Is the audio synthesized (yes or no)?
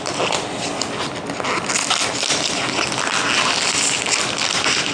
no